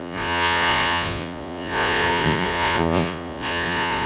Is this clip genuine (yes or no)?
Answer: no